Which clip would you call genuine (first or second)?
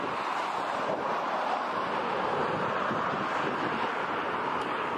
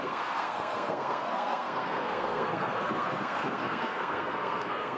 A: first